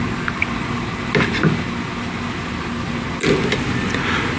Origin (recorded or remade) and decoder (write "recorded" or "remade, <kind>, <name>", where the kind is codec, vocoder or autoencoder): recorded